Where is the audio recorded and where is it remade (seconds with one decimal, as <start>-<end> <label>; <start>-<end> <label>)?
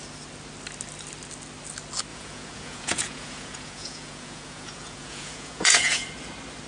0.0-2.1 recorded; 2.1-6.1 remade; 6.1-6.7 recorded